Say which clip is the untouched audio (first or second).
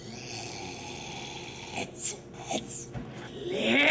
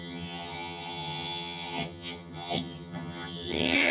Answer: first